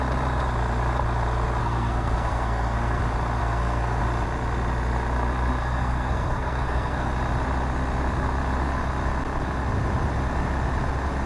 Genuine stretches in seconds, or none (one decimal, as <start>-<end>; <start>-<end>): 0.0-1.6; 3.0-3.4; 4.0-5.6; 7.1-11.3